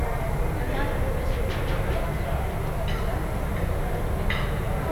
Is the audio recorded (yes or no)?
yes